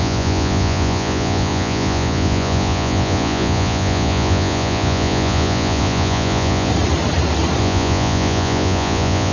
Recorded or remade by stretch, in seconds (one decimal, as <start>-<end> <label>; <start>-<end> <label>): 0.0-6.7 remade; 6.7-7.6 recorded; 7.6-9.3 remade